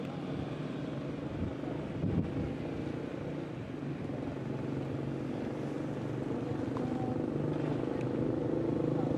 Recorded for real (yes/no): yes